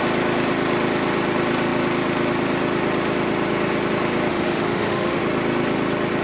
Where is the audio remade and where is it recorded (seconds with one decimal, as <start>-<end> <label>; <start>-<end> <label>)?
0.0-4.3 recorded; 4.3-5.2 remade; 5.2-6.2 recorded